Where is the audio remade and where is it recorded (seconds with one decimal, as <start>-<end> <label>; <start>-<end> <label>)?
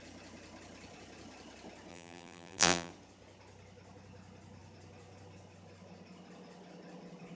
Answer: 0.0-1.9 recorded; 1.9-2.9 remade; 2.9-7.4 recorded